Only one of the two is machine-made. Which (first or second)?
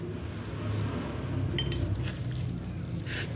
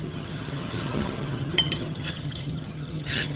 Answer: second